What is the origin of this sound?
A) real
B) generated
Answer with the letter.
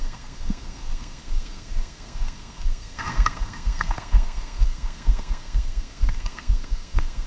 B